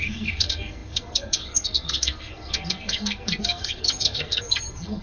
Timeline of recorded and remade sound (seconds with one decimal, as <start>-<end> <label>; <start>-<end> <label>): 0.0-5.0 remade